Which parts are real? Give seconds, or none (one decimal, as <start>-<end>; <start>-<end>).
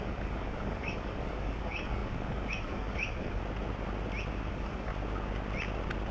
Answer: 3.4-4.5; 4.9-6.1